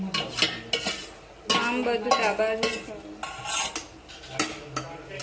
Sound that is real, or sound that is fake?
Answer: real